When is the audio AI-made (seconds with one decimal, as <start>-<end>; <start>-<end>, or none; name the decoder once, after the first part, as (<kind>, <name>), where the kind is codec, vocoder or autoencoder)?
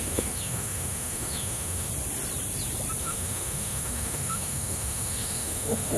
0.0-1.9 (autoencoder, DAC-VAE); 3.0-6.0